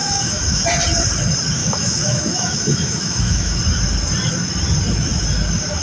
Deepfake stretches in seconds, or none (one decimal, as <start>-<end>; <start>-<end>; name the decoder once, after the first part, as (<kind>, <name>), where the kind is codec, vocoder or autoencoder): 0.0-0.6 (autoencoder, DAC-VAE); 1.6-3.6